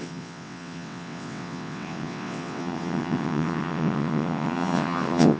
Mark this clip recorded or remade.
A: remade